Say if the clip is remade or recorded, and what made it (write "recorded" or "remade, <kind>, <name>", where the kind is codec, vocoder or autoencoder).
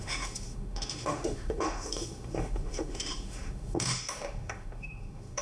remade, autoencoder, DAC-VAE